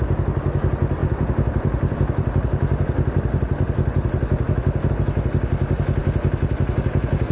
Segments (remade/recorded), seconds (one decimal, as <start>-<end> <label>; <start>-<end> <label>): 0.0-1.0 recorded; 1.0-4.9 remade; 4.9-7.3 recorded

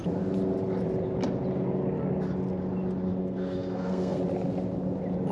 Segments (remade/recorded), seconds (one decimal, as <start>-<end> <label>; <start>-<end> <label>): 0.0-3.2 recorded; 3.2-4.2 remade; 4.2-5.3 recorded

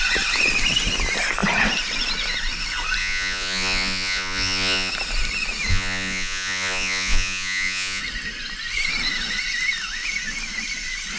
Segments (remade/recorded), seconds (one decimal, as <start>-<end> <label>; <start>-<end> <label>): 0.0-3.0 recorded; 3.0-4.9 remade; 4.9-5.7 recorded; 5.7-8.0 remade; 8.0-11.2 recorded

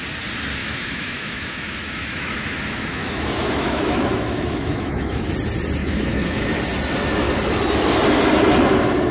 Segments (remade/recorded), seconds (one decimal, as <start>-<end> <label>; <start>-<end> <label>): 0.0-0.6 recorded; 0.6-5.3 remade; 5.3-5.8 recorded; 5.8-6.6 remade; 6.6-9.1 recorded

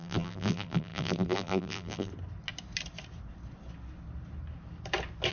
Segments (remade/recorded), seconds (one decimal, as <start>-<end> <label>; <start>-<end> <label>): 0.0-2.1 remade; 2.1-5.3 recorded

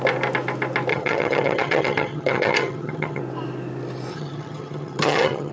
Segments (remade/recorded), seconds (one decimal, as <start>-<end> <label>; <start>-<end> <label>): 0.0-0.9 recorded; 0.9-3.2 remade; 3.2-4.1 recorded; 4.1-5.5 remade